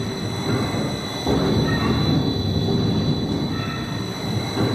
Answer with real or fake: real